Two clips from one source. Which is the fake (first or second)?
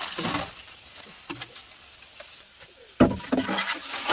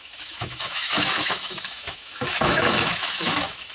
second